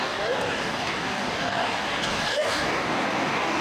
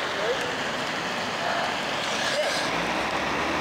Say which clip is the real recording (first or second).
second